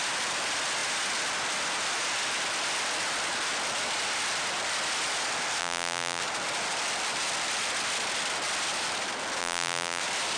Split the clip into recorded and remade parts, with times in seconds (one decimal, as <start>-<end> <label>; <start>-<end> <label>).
0.0-5.6 recorded; 5.6-6.2 remade; 6.2-9.4 recorded; 9.4-10.0 remade; 10.0-10.4 recorded